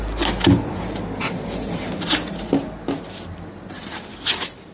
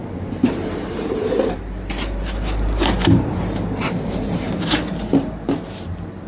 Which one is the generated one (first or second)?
second